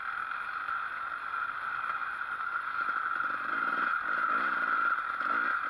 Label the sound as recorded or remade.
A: recorded